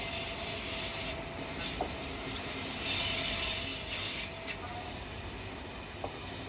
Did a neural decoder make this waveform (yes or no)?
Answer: no